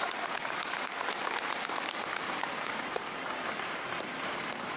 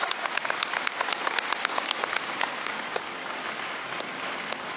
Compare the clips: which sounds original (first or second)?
second